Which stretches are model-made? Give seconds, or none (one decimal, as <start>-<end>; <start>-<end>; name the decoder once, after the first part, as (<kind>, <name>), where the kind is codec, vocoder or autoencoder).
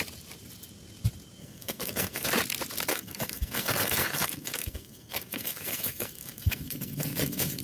1.4-2.3 (codec, SNAC); 2.9-7.6